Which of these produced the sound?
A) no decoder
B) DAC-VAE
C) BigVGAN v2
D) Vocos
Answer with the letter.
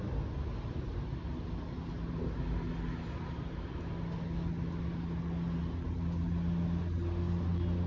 A